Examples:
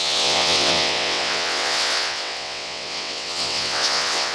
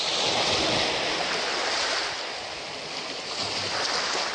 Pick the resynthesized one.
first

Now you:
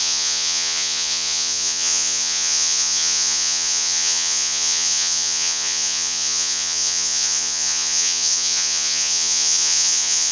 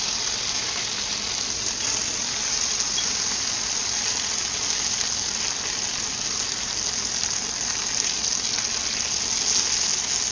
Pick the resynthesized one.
first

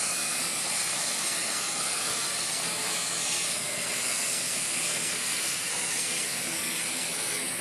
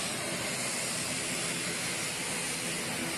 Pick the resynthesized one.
first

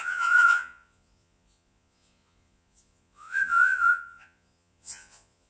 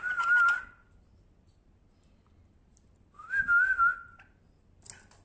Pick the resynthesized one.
first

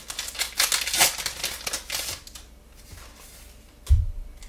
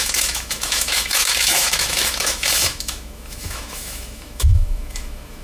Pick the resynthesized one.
second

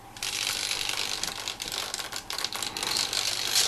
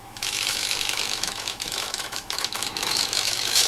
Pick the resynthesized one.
second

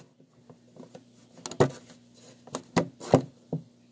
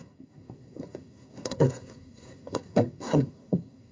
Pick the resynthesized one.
second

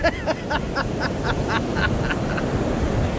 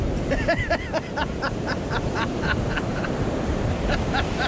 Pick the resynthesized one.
second